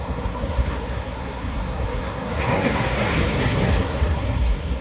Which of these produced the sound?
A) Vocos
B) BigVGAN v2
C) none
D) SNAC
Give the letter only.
D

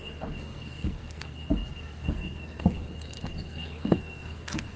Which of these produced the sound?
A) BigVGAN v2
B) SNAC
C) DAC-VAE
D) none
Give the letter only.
B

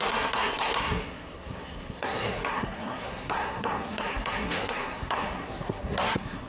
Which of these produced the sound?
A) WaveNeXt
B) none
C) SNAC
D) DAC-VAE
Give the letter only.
C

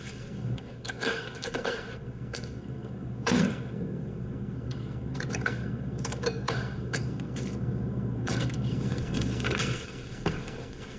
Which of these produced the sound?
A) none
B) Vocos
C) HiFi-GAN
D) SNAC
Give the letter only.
D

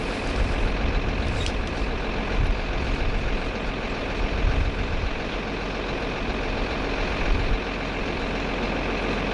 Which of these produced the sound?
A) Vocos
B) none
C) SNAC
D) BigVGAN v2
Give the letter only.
B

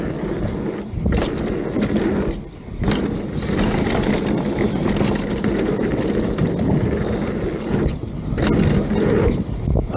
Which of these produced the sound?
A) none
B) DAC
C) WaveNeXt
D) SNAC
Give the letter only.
A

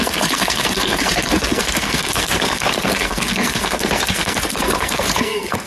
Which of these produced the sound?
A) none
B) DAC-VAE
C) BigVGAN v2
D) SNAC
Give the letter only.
D